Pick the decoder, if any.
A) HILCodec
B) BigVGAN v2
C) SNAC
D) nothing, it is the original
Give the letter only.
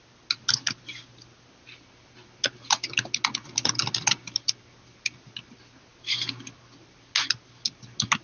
D